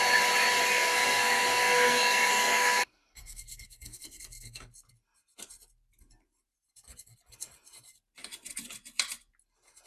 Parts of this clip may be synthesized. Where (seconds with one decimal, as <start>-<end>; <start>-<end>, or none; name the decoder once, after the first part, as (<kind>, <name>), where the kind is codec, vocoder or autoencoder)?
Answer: 0.7-4.7 (codec, SNAC)